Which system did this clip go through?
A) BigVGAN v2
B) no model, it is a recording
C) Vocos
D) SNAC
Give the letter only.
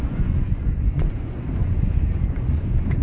C